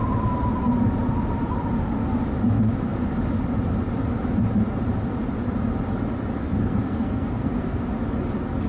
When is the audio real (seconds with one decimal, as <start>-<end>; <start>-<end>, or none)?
0.0-6.4; 7.8-8.7